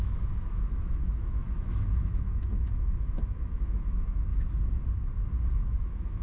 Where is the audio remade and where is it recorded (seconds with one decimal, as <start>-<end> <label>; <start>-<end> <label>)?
0.0-4.3 remade; 4.3-5.7 recorded; 5.7-6.2 remade